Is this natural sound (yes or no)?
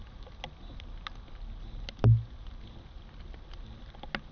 yes